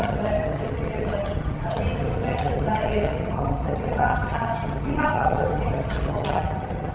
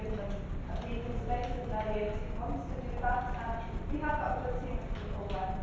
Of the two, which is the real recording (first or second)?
second